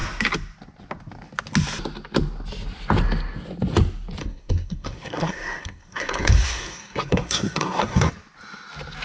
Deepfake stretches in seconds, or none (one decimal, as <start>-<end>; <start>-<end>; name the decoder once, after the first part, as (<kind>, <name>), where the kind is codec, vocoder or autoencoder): 4.2-8.1 (codec, SNAC)